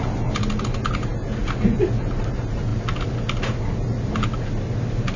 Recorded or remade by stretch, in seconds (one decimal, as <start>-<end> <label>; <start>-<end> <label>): 0.0-5.2 recorded